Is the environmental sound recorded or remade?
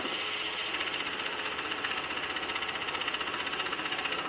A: recorded